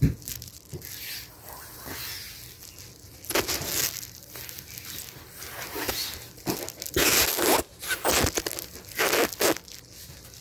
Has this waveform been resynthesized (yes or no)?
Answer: no